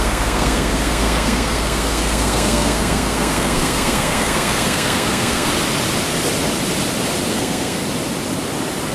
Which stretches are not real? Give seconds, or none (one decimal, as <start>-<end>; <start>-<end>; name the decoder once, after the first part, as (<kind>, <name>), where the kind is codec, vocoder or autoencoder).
0.0-5.5 (codec, SNAC); 7.3-7.8